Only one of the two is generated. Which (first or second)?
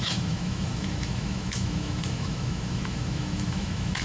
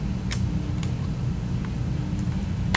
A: first